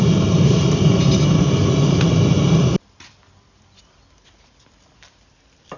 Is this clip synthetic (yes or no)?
no